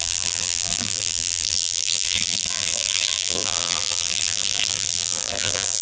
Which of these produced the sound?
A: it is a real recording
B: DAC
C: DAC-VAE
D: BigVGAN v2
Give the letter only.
D